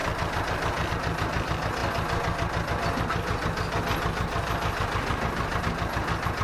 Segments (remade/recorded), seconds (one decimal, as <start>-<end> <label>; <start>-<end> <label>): 0.0-6.4 recorded